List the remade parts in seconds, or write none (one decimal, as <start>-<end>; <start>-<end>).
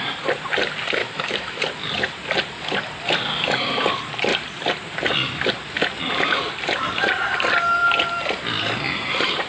1.0-1.6